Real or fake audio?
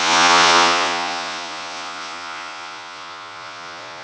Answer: fake